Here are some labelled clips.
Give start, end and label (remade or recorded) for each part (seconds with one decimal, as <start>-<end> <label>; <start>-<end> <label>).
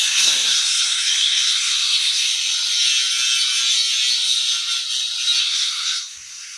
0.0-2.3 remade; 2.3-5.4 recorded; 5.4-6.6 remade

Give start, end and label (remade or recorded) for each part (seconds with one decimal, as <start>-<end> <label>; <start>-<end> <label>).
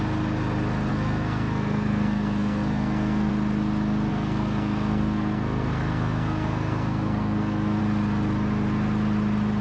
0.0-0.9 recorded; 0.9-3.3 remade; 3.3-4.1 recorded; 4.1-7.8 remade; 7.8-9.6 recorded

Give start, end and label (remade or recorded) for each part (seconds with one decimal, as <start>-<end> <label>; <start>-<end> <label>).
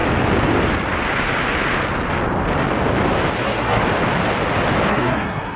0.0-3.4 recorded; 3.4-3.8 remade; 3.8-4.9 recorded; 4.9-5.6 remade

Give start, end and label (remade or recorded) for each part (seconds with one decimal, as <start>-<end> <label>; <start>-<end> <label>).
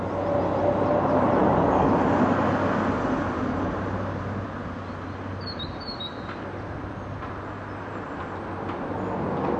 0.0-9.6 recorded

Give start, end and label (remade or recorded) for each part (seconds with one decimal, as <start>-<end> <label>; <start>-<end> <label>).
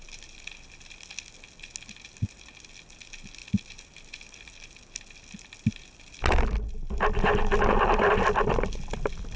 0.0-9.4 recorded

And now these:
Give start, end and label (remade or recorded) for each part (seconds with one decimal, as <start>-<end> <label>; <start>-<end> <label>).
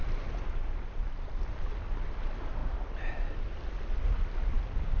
0.0-5.0 recorded